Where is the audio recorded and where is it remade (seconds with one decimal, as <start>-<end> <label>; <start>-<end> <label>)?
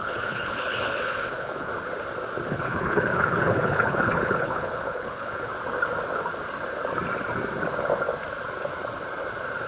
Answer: 0.0-1.7 remade; 1.7-2.5 recorded; 2.5-5.5 remade; 5.5-9.7 recorded